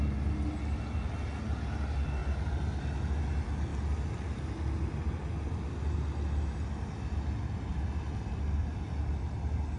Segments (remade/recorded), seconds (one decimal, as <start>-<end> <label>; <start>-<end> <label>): 0.0-2.2 recorded; 2.2-2.8 remade; 2.8-9.8 recorded